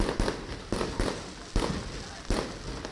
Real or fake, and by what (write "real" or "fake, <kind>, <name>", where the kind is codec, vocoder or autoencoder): real